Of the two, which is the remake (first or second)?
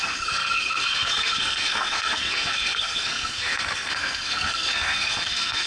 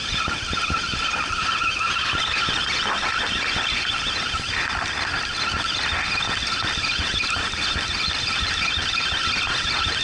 first